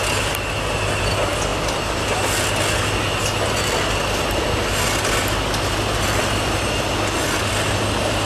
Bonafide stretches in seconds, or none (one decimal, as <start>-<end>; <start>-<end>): 0.0-8.3